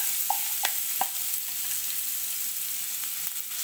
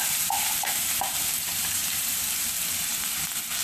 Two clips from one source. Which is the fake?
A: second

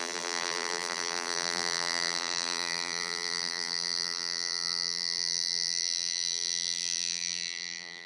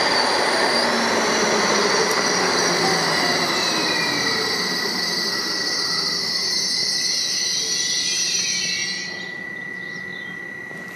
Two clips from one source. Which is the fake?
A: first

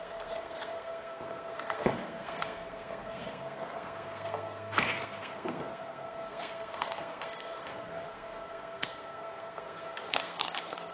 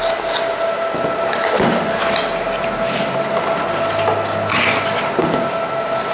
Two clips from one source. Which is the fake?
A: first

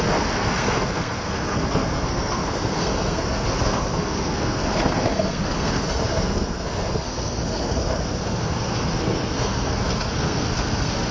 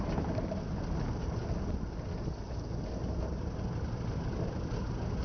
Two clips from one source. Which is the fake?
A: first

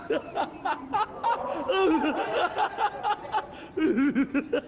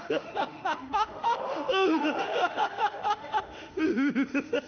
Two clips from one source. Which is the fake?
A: second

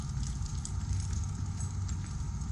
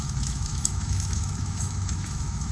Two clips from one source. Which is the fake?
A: second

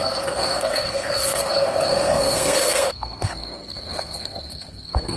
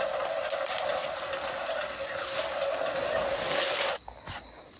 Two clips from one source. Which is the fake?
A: first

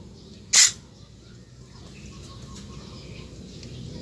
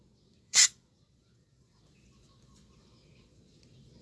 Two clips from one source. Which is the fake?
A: second